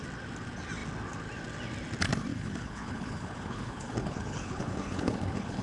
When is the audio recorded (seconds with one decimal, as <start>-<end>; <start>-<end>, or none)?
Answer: 0.0-2.3